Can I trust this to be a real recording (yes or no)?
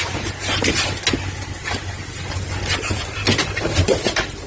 yes